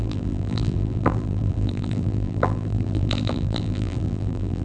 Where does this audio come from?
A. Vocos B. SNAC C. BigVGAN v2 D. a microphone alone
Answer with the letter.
C